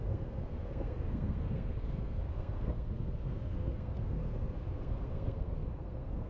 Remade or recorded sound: remade